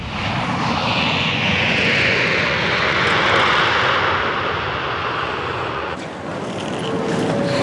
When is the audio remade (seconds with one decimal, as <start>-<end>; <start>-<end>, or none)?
0.8-3.6; 5.2-6.1